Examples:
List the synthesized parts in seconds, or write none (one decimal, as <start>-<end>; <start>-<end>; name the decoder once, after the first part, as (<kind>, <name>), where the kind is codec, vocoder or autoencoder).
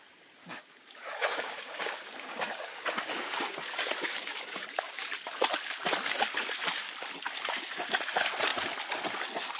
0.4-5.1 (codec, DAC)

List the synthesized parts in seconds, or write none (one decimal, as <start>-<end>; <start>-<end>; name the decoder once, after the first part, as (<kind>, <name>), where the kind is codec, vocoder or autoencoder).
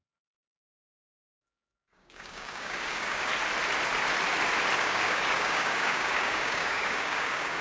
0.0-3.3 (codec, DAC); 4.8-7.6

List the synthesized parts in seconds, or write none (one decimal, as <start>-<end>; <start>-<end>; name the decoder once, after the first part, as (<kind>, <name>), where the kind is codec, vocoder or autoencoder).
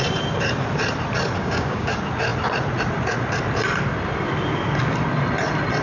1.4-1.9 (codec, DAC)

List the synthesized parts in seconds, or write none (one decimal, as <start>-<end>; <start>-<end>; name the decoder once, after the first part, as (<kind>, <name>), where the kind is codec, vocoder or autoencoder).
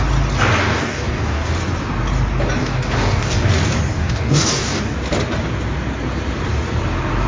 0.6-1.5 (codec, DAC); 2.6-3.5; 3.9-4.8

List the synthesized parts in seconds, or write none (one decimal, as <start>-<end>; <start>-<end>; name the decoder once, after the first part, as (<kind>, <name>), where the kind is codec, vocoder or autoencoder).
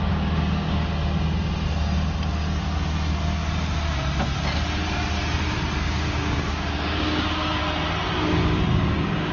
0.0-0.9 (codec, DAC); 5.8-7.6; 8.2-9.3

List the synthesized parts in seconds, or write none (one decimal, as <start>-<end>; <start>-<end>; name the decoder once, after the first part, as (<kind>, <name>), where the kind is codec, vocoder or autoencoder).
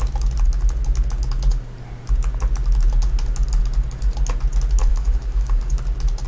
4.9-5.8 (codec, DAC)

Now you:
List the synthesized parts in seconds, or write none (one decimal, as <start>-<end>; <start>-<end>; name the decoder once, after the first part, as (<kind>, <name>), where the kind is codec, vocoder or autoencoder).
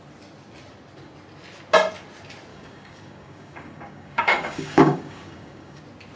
2.5-5.8 (codec, DAC)